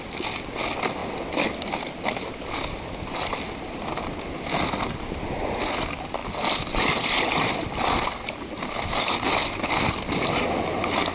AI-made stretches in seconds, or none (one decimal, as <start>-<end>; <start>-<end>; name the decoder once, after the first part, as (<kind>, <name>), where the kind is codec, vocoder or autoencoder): none